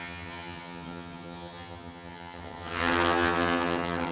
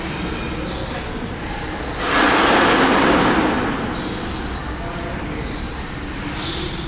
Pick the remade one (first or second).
first